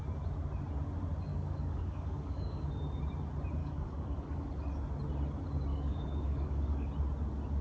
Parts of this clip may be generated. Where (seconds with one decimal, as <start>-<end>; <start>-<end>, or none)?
1.3-2.7; 3.6-4.5; 5.7-6.9